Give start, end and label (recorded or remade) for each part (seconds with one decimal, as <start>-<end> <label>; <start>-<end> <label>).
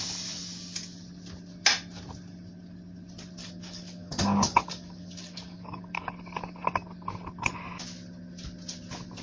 0.0-3.4 recorded; 3.4-6.1 remade; 6.1-9.2 recorded